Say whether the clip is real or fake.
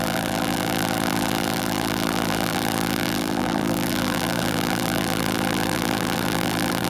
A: fake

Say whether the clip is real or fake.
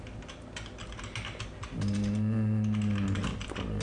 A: real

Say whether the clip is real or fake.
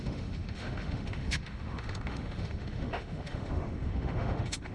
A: fake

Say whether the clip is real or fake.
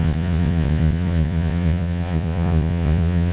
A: fake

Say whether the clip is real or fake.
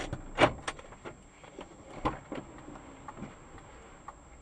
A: real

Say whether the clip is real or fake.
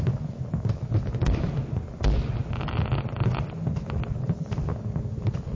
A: real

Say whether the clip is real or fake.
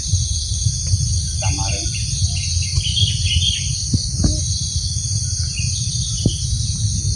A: real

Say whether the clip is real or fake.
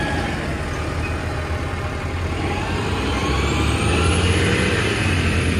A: real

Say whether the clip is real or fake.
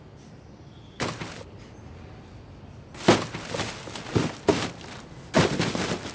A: real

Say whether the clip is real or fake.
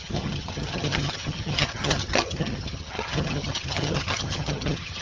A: fake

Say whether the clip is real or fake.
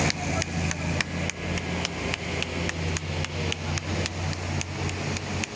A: real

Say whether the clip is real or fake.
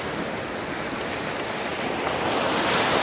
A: real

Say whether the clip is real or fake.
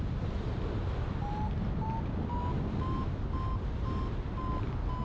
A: real